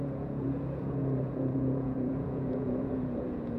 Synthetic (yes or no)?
yes